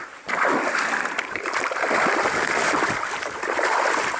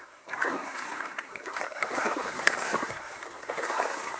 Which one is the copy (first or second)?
second